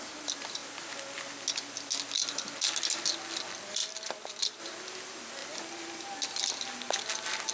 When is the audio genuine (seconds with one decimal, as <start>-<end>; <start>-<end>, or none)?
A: 0.0-7.5